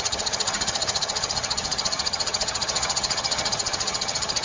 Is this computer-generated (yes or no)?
yes